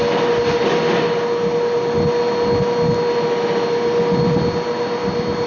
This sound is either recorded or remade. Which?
recorded